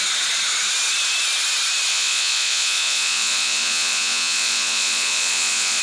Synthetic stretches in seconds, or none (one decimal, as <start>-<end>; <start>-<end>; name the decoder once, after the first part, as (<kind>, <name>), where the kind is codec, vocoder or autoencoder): 1.9-5.8 (vocoder, Vocos)